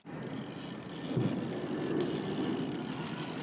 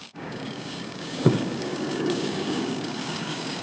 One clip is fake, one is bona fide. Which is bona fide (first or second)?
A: first